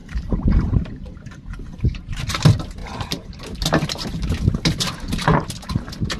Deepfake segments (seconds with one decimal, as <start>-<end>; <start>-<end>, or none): 0.0-2.3; 2.8-3.4